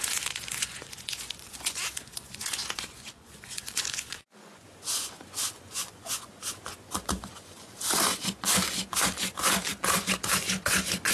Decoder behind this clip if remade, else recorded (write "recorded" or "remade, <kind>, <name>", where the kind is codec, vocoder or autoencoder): remade, vocoder, Vocos